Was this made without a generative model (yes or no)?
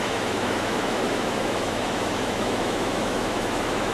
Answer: no